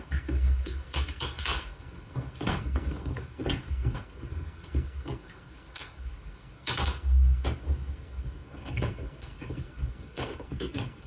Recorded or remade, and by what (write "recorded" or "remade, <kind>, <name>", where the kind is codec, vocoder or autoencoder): remade, codec, SNAC